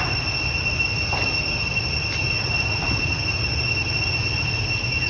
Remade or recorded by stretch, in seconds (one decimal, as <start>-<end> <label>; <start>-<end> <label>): 0.0-5.1 recorded